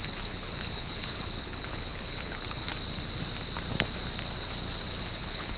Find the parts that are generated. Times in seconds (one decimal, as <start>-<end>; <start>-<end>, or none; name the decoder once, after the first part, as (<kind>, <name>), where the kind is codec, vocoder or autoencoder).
0.0-2.7 (codec, HILCodec); 5.0-5.6